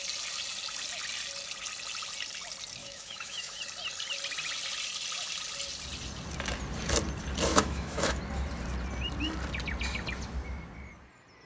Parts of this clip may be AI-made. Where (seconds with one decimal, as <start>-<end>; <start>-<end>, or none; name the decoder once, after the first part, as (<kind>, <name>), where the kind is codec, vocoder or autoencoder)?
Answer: 2.8-3.6 (autoencoder, DAC-VAE); 7.5-8.2